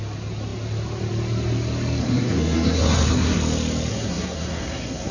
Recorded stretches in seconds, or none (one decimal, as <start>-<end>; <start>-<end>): 0.0-2.0; 3.4-3.9